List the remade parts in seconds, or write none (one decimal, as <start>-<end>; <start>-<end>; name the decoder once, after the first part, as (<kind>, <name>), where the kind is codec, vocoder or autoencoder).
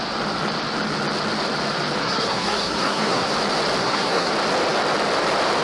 2.0-3.3 (codec, SNAC); 3.8-4.3